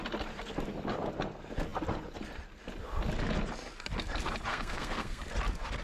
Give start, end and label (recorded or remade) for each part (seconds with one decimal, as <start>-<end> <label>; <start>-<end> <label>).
0.0-4.5 recorded; 4.5-5.2 remade; 5.2-5.8 recorded